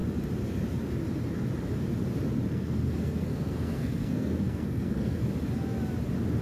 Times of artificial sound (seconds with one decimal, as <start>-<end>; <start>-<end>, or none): 2.5-5.2